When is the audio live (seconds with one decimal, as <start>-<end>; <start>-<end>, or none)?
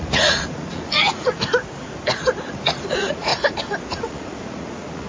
1.3-2.5; 3.3-3.9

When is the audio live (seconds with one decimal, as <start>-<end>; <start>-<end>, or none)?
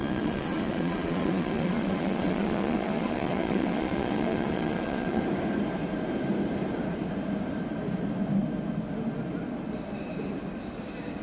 5.2-11.2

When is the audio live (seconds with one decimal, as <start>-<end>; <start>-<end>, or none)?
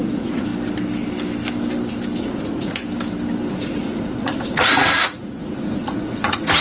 0.5-2.2; 2.8-3.5